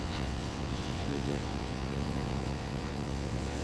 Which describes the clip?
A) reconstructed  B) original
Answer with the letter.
A